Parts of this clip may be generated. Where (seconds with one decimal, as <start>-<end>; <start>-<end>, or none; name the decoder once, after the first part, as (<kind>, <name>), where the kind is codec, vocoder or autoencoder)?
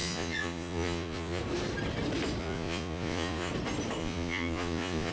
0.0-1.4 (vocoder, Vocos); 2.4-3.5; 4.0-5.1